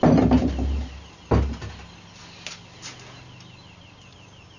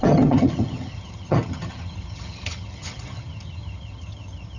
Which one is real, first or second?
first